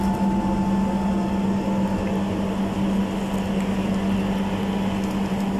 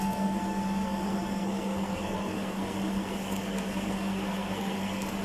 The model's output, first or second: second